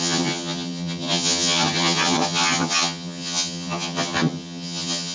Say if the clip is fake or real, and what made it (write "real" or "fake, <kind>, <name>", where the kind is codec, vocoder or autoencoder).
fake, vocoder, HiFi-GAN